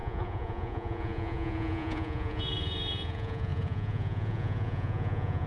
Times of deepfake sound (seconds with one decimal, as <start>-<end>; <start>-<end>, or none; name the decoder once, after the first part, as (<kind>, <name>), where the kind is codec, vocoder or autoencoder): 0.0-5.5 (vocoder, Vocos)